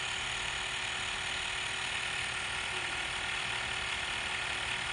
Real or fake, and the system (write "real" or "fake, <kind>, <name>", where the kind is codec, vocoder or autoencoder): real